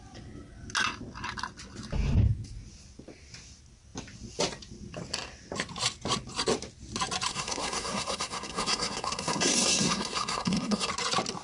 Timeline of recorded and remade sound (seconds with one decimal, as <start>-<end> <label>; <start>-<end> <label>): 0.0-7.3 recorded; 7.3-10.9 remade; 10.9-11.4 recorded